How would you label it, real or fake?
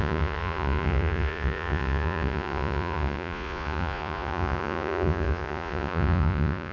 fake